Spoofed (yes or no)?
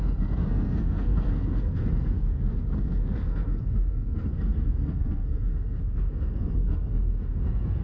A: yes